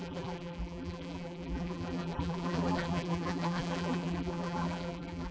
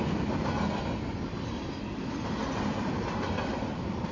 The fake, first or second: first